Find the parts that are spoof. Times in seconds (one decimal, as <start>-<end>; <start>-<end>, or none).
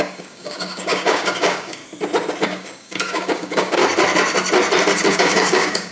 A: 0.0-1.8; 2.4-3.8; 5.1-5.9